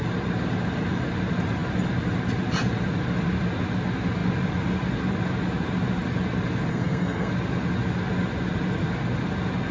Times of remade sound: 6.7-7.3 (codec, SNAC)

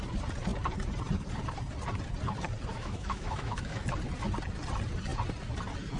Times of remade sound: 2.7-3.8 (autoencoder, DAC-VAE)

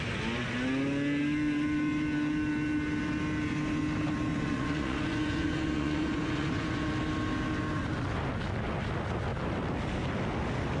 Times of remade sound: 4.3-6.9 (vocoder, Vocos)

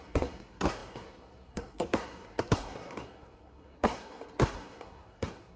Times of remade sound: 0.0-5.6 (codec, SNAC)

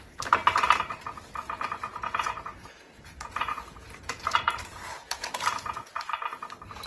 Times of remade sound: 1.9-4.6 (vocoder, Vocos); 5.0-5.9

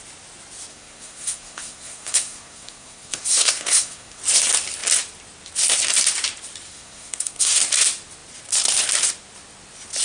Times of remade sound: 0.7-4.2 (codec, SNAC); 6.7-7.6